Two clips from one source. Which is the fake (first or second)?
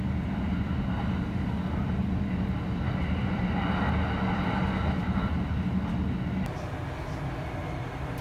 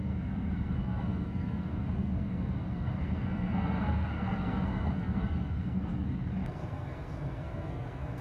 second